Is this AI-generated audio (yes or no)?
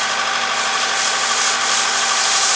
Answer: yes